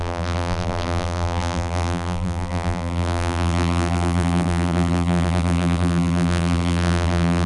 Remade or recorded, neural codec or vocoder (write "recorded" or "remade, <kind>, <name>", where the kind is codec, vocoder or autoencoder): remade, vocoder, BigVGAN v2